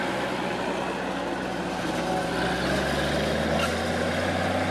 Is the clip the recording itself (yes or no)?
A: yes